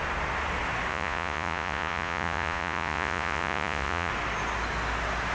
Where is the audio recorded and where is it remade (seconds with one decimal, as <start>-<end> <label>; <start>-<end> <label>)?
0.0-0.9 recorded; 0.9-4.1 remade; 4.1-5.3 recorded